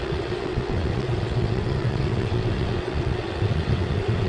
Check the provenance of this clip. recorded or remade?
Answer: remade